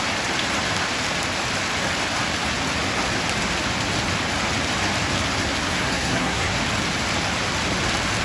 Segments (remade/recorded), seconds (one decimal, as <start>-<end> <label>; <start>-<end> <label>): 0.0-5.6 recorded; 5.6-6.6 remade; 6.6-8.2 recorded